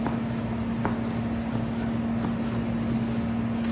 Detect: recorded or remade recorded